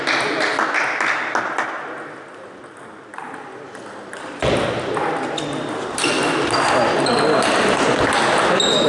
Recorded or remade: recorded